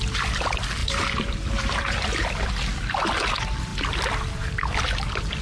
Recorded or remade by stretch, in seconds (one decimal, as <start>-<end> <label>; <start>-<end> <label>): 0.0-0.8 recorded; 0.8-2.3 remade; 2.3-5.4 recorded